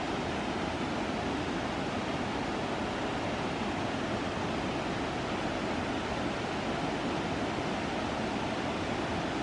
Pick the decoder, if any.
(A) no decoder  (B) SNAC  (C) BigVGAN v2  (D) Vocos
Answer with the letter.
A